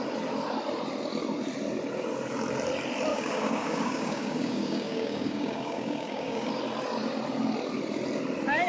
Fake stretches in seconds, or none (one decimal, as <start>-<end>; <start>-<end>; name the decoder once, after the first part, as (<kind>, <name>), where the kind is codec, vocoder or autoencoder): 3.1-6.5 (codec, DAC)